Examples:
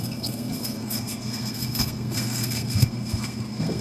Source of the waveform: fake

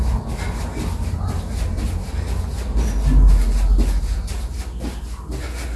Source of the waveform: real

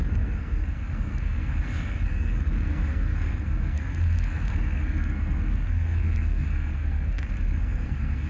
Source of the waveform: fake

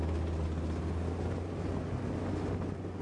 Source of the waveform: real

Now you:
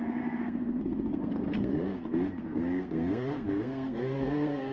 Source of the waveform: fake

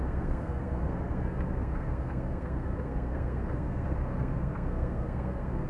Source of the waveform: fake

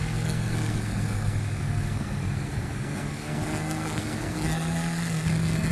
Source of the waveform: fake